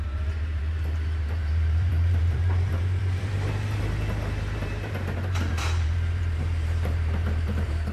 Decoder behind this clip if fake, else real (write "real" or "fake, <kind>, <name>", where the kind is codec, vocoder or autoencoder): fake, vocoder, BigVGAN v2